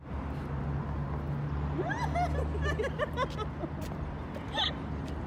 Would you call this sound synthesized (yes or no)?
no